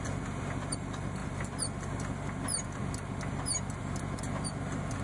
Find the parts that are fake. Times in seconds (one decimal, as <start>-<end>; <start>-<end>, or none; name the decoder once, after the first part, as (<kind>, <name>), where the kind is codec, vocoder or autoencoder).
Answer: none